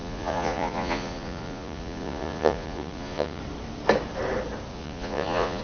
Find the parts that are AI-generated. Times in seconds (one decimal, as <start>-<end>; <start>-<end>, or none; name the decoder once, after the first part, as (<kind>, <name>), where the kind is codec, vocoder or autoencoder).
0.0-3.4 (vocoder, Vocos); 4.7-5.6